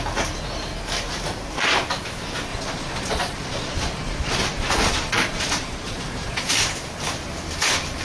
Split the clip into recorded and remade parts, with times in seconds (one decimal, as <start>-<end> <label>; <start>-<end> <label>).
0.0-2.5 recorded; 2.5-6.5 remade; 6.5-8.0 recorded